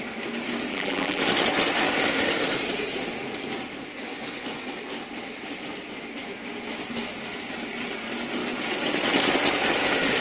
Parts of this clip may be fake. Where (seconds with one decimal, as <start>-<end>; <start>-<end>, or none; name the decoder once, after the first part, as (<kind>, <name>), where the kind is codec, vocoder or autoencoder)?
0.7-1.2 (vocoder, BigVGAN v2)